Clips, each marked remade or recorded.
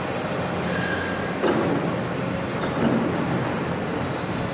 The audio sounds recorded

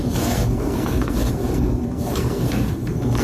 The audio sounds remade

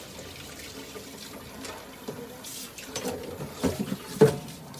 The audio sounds recorded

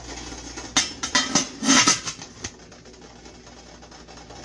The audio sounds recorded